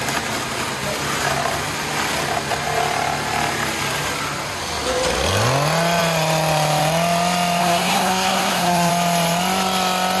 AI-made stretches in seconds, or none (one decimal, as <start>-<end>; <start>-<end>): 7.6-8.9